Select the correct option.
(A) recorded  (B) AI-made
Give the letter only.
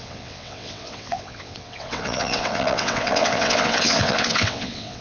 B